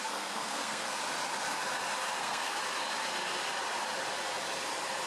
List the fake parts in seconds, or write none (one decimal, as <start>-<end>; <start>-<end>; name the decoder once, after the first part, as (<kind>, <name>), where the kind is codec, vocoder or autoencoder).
0.0-1.0 (codec, SNAC); 2.2-2.6